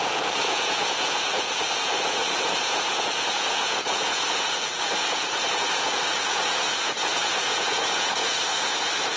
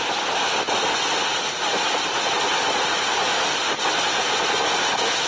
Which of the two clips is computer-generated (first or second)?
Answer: first